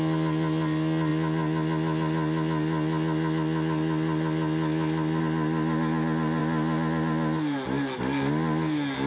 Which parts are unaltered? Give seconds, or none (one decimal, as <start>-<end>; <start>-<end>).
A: 0.0-9.1